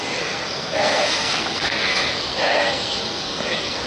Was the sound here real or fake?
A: fake